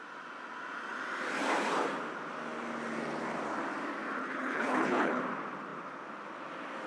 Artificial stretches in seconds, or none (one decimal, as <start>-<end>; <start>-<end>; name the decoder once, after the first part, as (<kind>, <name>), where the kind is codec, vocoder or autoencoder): 4.2-5.2 (codec, HILCodec)